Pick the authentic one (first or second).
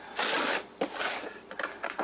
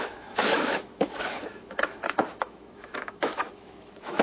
first